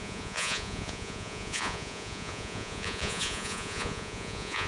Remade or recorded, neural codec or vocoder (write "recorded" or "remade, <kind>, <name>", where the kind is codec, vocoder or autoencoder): remade, vocoder, Vocos